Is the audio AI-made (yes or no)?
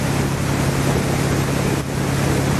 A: no